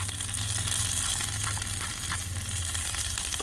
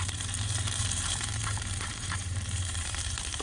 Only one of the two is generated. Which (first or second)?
second